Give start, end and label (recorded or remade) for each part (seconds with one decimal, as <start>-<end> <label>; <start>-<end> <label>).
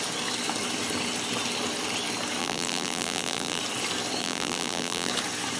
0.0-2.4 recorded; 2.4-3.6 remade; 3.6-4.2 recorded; 4.2-5.1 remade; 5.1-5.6 recorded